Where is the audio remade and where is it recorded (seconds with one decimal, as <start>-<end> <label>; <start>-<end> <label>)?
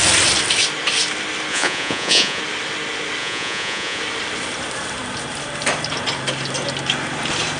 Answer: 0.0-1.5 recorded; 1.5-2.4 remade; 2.4-3.2 recorded; 3.2-4.0 remade; 4.0-7.6 recorded